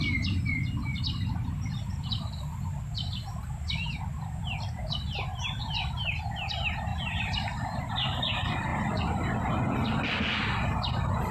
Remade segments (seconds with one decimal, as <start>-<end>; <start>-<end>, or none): 0.9-2.3; 5.6-6.2; 6.9-7.8; 8.7-9.5